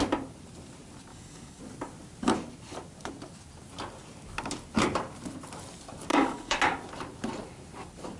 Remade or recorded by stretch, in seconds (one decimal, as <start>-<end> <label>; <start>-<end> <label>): 0.0-1.1 recorded; 1.1-1.6 remade; 1.6-6.1 recorded; 6.1-6.6 remade; 6.6-8.2 recorded